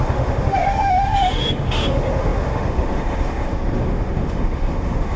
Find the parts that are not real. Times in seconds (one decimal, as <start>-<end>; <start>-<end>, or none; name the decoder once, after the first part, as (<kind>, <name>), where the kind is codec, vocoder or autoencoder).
0.0-5.2 (autoencoder, DAC-VAE)